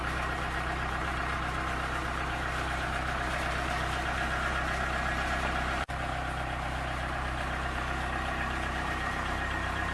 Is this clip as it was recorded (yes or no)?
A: no